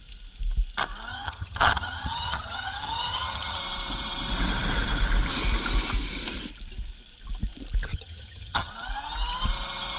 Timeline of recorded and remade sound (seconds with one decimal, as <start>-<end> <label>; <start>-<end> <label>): 0.0-1.1 recorded; 1.1-3.6 remade; 3.6-7.9 recorded; 7.9-8.7 remade; 8.7-10.0 recorded